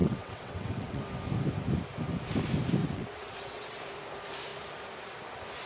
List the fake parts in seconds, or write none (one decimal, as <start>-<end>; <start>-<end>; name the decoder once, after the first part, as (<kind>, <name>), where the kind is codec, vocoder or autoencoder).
0.0-1.0 (vocoder, WaveNeXt); 2.8-3.8